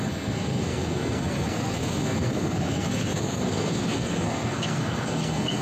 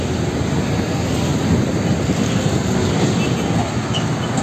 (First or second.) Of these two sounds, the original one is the second